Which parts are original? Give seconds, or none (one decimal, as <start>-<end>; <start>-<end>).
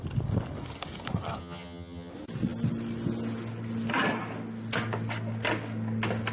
0.0-1.4; 2.1-6.3